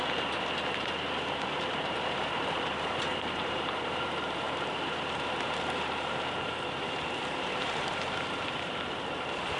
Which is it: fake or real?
fake